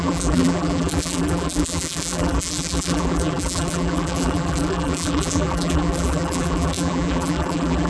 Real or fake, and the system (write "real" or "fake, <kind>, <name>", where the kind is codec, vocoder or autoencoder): fake, vocoder, BigVGAN v2